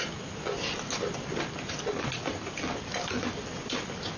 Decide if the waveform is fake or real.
real